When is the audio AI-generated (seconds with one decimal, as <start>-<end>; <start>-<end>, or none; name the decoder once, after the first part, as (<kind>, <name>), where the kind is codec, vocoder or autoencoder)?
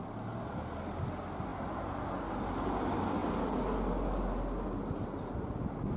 none